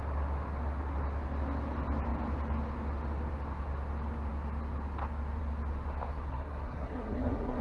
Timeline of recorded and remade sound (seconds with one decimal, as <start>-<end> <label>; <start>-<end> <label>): 0.0-6.1 recorded; 6.1-7.6 remade